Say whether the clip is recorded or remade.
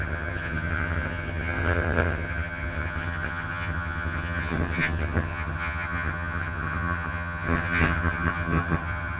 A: remade